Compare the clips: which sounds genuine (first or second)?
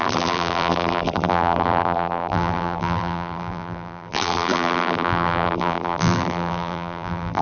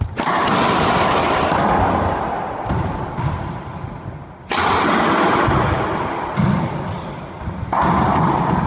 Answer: second